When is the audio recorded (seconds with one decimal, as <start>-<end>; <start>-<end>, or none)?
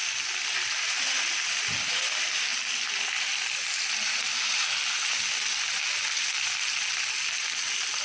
0.0-8.0